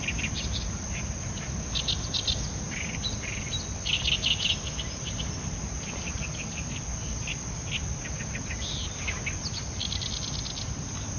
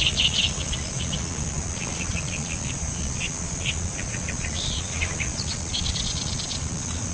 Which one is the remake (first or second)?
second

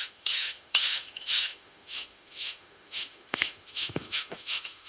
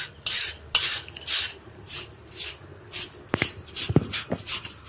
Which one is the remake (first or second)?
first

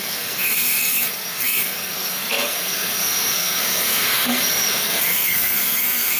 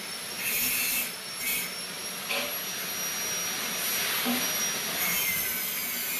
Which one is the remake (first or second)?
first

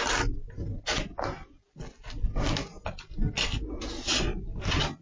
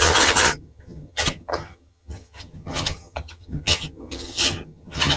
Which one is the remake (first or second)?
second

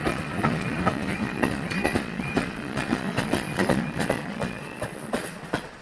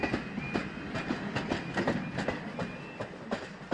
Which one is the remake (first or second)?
first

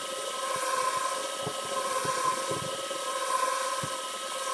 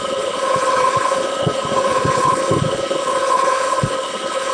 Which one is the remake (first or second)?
second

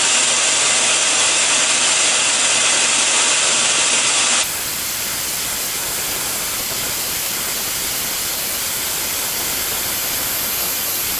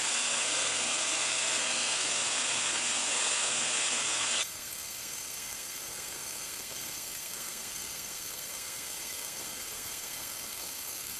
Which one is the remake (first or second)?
second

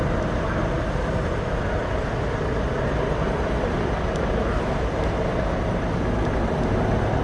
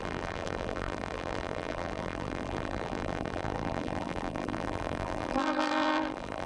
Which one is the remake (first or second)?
second